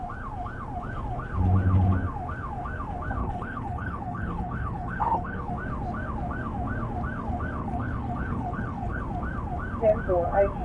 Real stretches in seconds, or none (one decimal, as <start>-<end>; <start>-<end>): 0.0-3.2; 5.5-7.6; 9.0-10.6